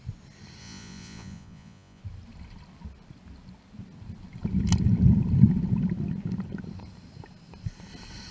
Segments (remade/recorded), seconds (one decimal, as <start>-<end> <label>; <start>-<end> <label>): 0.0-0.6 recorded; 0.6-2.0 remade; 2.0-8.3 recorded